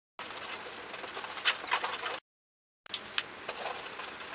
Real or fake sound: real